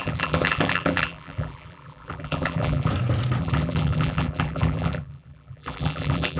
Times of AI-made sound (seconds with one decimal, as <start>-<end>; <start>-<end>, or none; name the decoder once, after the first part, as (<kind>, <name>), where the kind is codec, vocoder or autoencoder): 0.0-2.9 (vocoder, BigVGAN v2); 3.4-6.4